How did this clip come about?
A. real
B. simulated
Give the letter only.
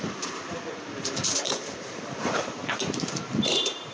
B